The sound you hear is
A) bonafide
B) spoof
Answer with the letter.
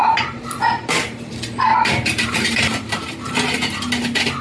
A